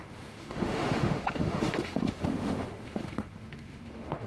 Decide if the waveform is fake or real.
fake